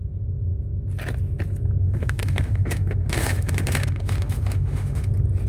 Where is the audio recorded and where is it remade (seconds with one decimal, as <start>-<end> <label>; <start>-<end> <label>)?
0.0-1.8 recorded; 1.8-5.1 remade; 5.1-5.5 recorded